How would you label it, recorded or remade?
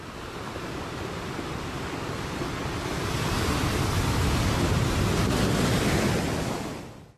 recorded